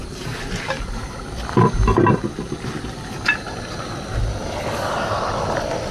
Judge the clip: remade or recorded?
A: recorded